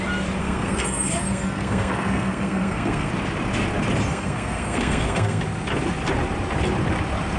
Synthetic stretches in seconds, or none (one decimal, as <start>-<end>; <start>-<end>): 0.4-3.1; 4.1-5.4